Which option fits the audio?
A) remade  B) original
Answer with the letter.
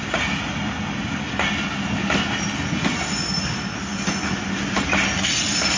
B